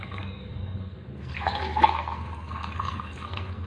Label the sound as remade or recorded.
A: remade